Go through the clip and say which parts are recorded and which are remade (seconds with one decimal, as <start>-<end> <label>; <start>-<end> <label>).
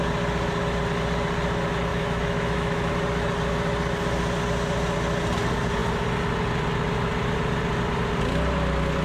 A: 0.0-1.9 recorded; 1.9-2.9 remade; 2.9-9.0 recorded